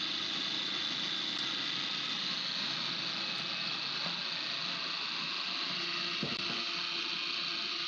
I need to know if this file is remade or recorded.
recorded